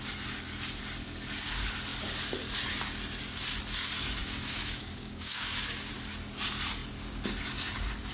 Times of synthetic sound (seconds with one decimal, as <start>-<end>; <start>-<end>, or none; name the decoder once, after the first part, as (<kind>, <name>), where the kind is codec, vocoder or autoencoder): 4.2-5.9 (codec, DAC)